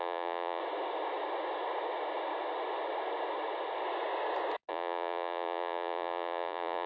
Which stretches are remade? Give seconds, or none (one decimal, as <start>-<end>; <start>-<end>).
0.0-0.6; 4.7-6.9